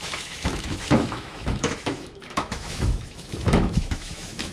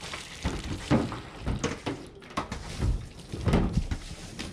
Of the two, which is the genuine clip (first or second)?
second